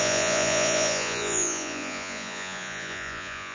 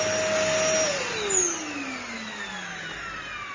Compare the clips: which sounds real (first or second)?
second